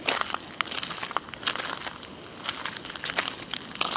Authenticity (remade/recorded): recorded